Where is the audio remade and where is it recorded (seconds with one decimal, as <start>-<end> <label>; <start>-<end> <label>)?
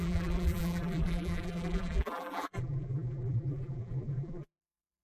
0.0-5.0 remade